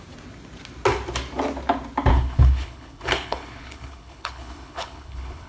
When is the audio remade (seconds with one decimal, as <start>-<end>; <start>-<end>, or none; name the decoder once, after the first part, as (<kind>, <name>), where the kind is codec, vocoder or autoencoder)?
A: 2.1-5.5 (codec, HILCodec)